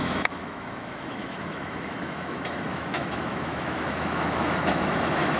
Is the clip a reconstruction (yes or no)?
yes